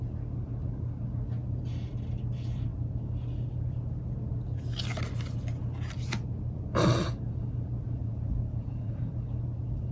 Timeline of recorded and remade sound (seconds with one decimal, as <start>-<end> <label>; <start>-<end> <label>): 0.0-7.8 recorded; 7.8-9.1 remade; 9.1-9.9 recorded